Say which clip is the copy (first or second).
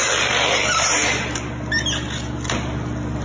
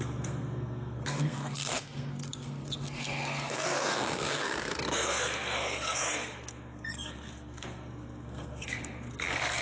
second